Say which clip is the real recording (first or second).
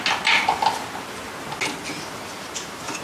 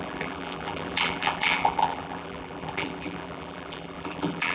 first